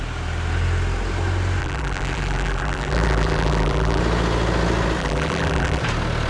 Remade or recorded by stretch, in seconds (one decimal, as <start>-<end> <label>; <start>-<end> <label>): 0.0-1.6 recorded; 1.6-4.0 remade; 4.0-5.0 recorded; 5.0-5.8 remade; 5.8-6.3 recorded